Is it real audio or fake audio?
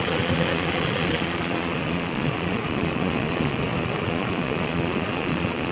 fake